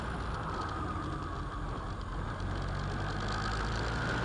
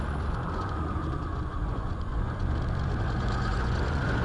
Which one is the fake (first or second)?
second